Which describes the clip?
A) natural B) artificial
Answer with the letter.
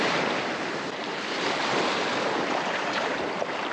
B